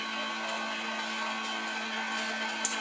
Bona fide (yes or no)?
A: yes